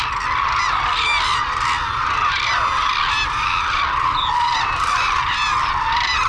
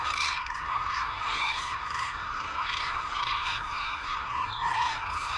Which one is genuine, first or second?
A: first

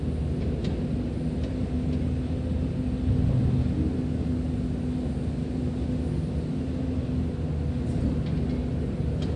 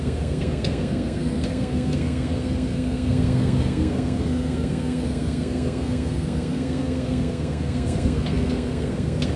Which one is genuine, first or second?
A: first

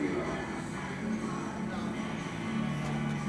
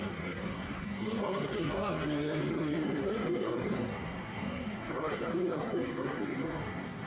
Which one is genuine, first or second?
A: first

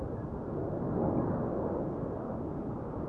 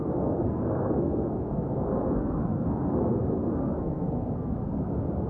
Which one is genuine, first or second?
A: first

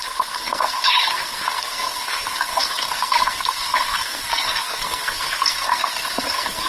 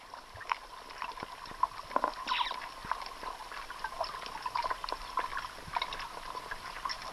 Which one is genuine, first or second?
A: second